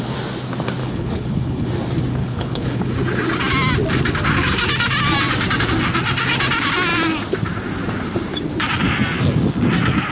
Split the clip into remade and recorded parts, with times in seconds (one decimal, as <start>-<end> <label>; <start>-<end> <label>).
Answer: 0.0-0.8 recorded; 0.8-1.7 remade; 1.7-2.2 recorded; 2.2-2.8 remade; 2.8-10.1 recorded